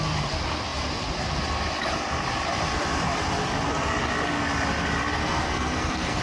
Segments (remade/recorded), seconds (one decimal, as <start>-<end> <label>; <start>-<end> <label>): 0.0-5.2 recorded; 5.2-6.2 remade